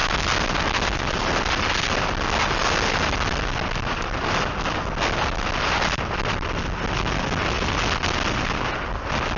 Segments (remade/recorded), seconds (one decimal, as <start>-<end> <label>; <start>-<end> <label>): 0.0-9.4 recorded